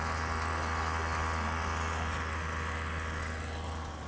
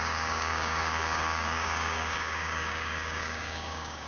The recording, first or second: first